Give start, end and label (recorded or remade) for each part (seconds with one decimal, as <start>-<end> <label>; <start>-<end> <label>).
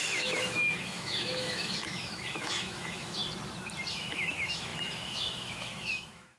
0.0-3.2 remade; 3.2-3.9 recorded; 3.9-6.4 remade